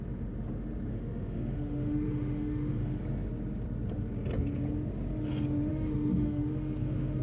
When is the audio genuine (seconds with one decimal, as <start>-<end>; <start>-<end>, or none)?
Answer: 0.0-0.9; 3.0-5.7